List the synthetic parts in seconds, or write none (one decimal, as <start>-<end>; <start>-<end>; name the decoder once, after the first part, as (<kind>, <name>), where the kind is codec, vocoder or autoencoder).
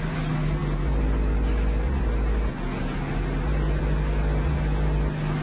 none